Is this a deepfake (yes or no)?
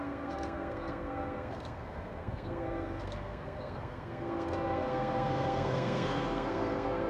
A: yes